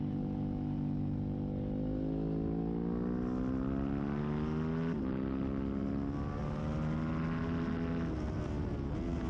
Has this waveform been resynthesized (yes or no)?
no